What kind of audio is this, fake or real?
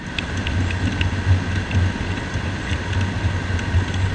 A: real